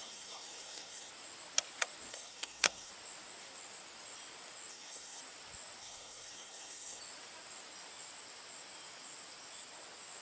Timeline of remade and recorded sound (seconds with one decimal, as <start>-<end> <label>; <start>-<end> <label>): 0.0-1.1 remade; 1.1-2.1 recorded; 2.1-2.9 remade; 2.9-4.7 recorded; 4.7-5.2 remade; 5.2-5.8 recorded; 5.8-7.0 remade; 7.0-10.2 recorded

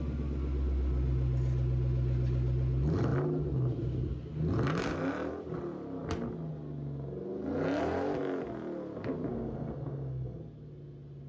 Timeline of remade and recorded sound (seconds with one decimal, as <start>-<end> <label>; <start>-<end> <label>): 0.0-9.3 recorded; 9.3-10.4 remade; 10.4-11.3 recorded

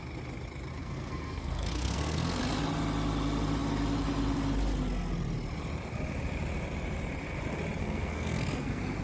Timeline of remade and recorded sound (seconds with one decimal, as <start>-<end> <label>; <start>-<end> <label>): 0.0-0.8 recorded; 0.8-2.4 remade; 2.4-7.8 recorded; 7.8-9.0 remade

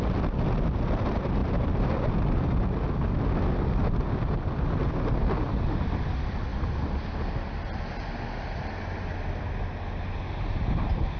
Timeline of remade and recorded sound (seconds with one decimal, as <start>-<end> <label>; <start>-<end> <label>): 0.0-11.2 recorded

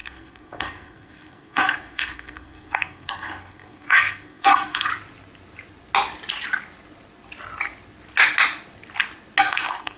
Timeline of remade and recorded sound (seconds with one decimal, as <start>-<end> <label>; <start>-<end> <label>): 0.0-4.9 remade; 4.9-9.4 recorded; 9.4-10.0 remade